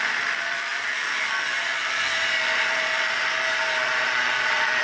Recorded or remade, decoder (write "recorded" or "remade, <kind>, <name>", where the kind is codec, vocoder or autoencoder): remade, vocoder, BigVGAN v2